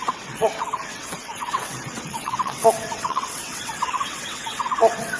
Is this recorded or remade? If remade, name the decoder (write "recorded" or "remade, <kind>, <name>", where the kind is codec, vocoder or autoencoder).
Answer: remade, vocoder, WaveNeXt